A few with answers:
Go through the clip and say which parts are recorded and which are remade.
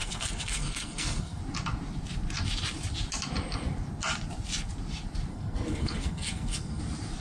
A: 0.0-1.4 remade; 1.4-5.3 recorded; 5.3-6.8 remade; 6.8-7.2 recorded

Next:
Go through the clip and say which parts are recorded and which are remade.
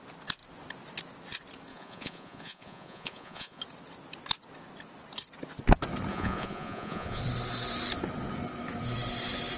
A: 0.0-1.7 recorded; 1.7-3.6 remade; 3.6-6.1 recorded; 6.1-7.2 remade; 7.2-9.6 recorded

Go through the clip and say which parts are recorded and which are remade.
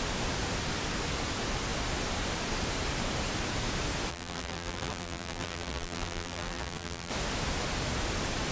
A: 0.0-4.1 recorded; 4.1-7.1 remade; 7.1-8.5 recorded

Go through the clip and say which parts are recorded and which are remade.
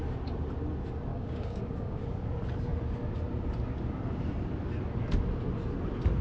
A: 0.0-1.1 recorded; 1.1-2.0 remade; 2.0-6.2 recorded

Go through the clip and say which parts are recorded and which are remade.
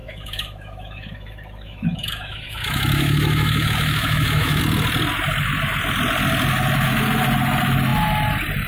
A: 0.0-4.6 remade; 4.6-8.7 recorded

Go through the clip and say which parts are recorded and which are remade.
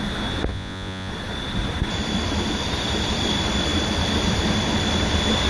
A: 0.0-0.5 recorded; 0.5-1.1 remade; 1.1-5.5 recorded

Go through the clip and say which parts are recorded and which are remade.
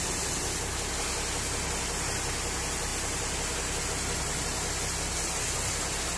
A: 0.0-6.2 recorded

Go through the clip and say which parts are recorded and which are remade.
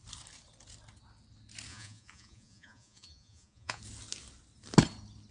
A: 0.0-1.7 recorded; 1.7-3.8 remade; 3.8-5.3 recorded